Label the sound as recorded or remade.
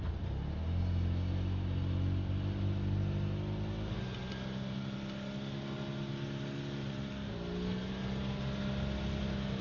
recorded